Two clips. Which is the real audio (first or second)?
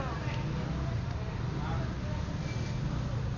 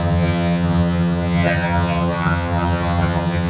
first